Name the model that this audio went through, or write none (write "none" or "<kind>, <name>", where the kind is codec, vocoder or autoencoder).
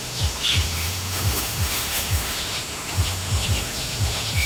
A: autoencoder, DAC-VAE